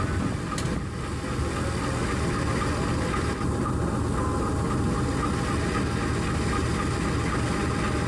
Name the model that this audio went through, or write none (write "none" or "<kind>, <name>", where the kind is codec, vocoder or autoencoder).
none